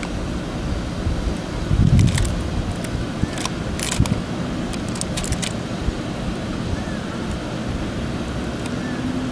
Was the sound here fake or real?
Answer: real